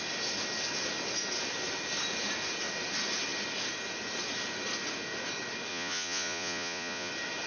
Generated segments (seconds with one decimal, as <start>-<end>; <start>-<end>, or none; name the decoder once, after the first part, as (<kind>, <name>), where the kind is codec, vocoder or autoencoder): 5.7-7.1 (vocoder, Vocos)